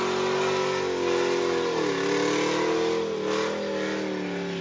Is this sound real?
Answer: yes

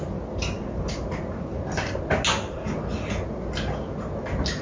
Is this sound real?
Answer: yes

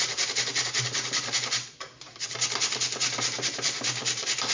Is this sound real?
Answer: yes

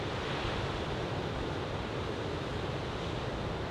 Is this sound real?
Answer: yes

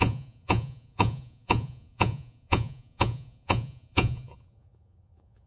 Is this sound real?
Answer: no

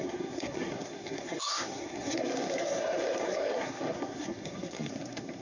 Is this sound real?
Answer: no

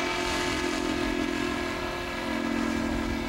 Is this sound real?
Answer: yes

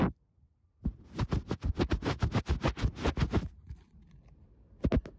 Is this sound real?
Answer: yes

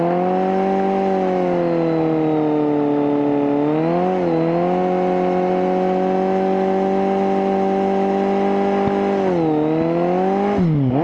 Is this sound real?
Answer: yes